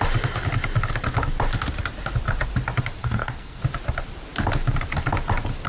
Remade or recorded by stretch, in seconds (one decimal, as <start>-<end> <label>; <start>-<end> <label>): 0.0-3.0 recorded; 3.0-3.6 remade; 3.6-5.7 recorded